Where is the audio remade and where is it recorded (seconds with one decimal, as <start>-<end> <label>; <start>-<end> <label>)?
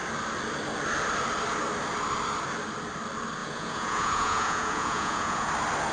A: 0.0-3.4 recorded; 3.4-5.5 remade; 5.5-5.9 recorded